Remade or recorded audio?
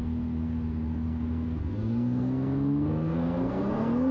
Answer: remade